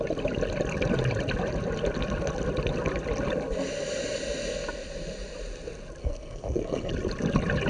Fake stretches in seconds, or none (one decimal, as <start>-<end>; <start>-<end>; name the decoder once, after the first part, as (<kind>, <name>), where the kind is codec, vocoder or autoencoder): 6.0-6.9 (codec, SNAC)